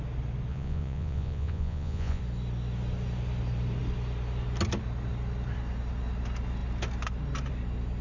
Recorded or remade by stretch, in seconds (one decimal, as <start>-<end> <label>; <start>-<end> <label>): 0.0-0.5 recorded; 0.5-2.2 remade; 2.2-8.0 recorded